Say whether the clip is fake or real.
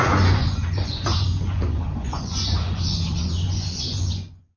fake